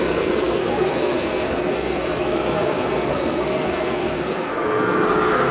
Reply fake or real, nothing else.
fake